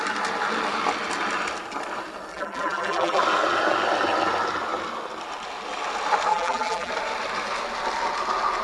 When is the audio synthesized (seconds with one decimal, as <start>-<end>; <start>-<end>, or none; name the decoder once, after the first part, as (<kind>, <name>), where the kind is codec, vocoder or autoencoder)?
2.3-3.2 (vocoder, BigVGAN v2); 6.3-6.9